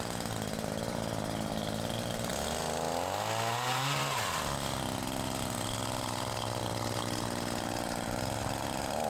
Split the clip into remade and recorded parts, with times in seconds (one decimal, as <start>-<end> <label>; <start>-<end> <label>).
0.0-9.1 recorded